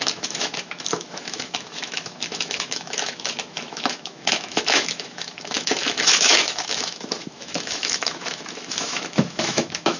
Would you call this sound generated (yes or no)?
yes